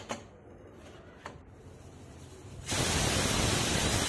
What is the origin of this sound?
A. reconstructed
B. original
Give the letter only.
B